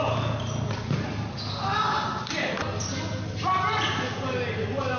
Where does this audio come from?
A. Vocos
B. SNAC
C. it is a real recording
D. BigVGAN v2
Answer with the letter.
C